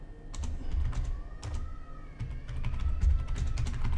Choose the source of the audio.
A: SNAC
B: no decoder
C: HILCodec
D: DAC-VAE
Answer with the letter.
B